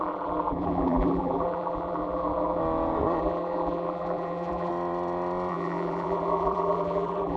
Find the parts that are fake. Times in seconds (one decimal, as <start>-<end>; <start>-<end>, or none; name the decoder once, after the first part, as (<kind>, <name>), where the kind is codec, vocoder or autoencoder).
0.0-2.6 (vocoder, BigVGAN v2); 3.2-4.7; 5.5-7.4